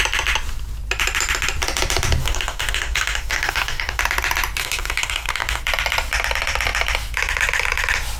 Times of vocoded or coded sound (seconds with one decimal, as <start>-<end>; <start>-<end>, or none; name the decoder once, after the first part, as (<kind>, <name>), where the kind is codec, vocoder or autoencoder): 2.2-4.0 (codec, DAC); 4.6-5.6